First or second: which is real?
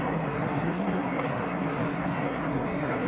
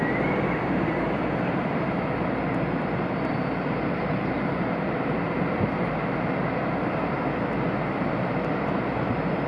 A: second